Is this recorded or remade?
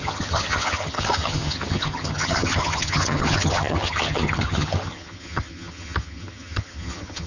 remade